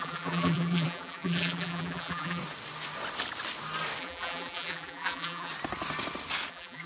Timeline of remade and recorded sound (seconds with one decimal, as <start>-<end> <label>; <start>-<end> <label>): 0.0-2.4 remade; 2.4-4.0 recorded; 4.0-5.5 remade; 5.5-6.5 recorded; 6.5-6.9 remade

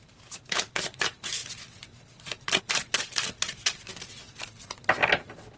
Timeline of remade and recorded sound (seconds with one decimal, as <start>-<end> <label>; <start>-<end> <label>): 0.0-1.4 remade; 1.4-2.6 recorded; 2.6-3.9 remade; 3.9-5.6 recorded